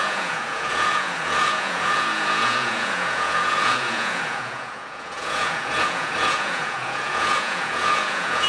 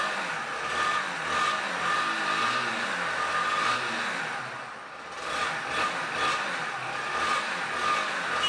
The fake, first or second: first